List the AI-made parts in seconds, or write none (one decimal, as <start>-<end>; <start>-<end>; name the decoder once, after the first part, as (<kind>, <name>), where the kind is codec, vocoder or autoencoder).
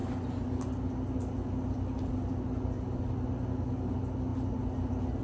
none